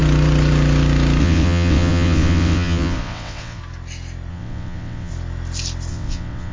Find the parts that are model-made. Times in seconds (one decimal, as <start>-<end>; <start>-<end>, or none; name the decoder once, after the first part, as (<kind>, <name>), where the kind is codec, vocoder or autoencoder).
1.2-3.6 (vocoder, WaveNeXt); 4.3-5.1; 5.9-6.5